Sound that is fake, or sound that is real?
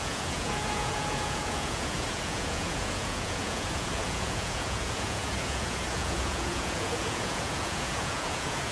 fake